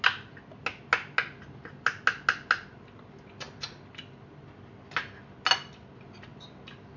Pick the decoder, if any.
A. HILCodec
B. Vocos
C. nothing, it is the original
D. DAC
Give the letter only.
C